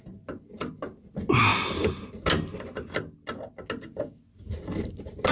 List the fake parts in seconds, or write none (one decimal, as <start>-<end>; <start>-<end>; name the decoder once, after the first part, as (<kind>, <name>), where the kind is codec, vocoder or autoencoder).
none